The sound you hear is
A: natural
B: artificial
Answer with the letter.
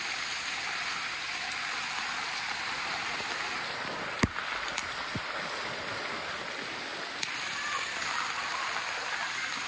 A